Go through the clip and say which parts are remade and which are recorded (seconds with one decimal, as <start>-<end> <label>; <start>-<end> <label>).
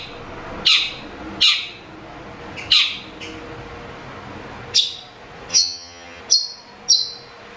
0.0-5.5 recorded; 5.5-6.2 remade; 6.2-7.6 recorded